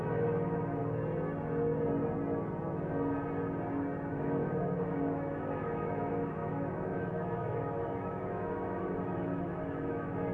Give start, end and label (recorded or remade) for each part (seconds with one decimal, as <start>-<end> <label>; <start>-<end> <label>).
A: 0.0-0.8 remade; 0.8-4.1 recorded; 4.1-10.3 remade